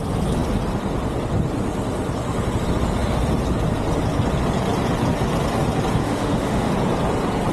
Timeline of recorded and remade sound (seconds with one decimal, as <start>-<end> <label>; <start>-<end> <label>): 0.0-6.0 recorded; 6.0-6.7 remade; 6.7-7.5 recorded